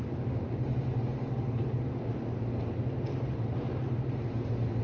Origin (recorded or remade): recorded